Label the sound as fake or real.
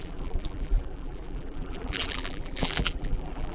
fake